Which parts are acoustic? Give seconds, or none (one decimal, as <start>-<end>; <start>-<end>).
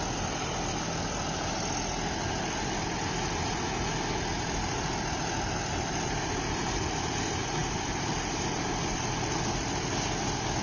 0.0-7.6; 9.1-10.6